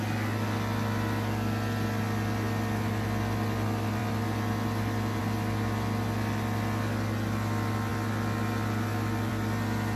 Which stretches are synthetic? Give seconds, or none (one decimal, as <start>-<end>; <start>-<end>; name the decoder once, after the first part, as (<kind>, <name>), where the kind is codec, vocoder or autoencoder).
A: none